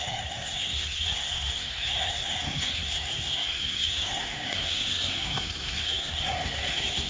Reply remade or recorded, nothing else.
remade